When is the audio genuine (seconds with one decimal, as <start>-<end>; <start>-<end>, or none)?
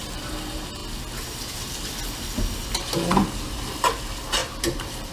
0.0-4.4